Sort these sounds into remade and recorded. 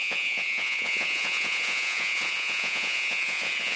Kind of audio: remade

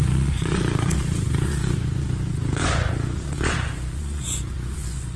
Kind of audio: remade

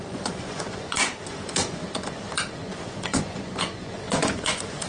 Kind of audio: remade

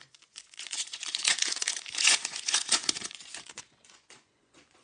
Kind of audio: remade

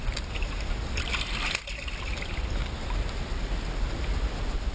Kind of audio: recorded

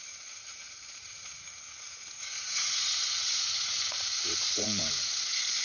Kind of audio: remade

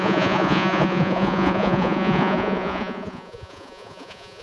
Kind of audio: remade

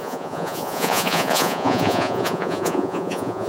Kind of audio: remade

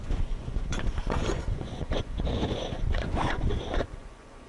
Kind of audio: remade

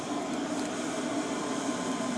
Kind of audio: recorded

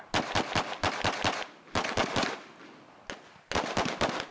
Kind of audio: recorded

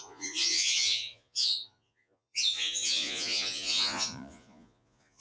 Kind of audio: remade